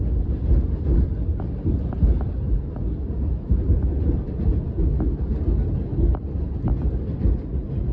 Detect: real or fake real